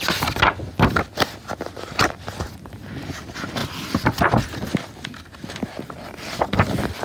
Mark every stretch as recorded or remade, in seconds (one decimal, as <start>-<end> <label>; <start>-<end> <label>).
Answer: 0.0-7.0 recorded